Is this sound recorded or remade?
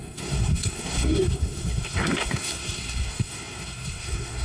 remade